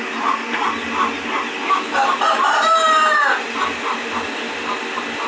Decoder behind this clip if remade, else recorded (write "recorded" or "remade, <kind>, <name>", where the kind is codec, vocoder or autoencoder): recorded